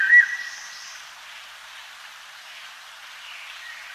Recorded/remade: recorded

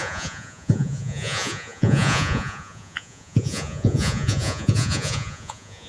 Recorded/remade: remade